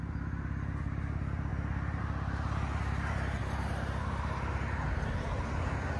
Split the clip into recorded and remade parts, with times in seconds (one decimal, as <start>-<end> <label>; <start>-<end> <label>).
0.0-3.4 recorded; 3.4-5.5 remade; 5.5-6.0 recorded